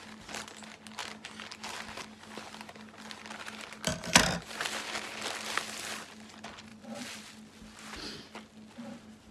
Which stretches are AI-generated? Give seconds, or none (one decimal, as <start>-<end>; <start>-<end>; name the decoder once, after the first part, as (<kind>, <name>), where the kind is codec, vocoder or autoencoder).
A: 3.9-4.7 (vocoder, BigVGAN v2); 6.7-7.2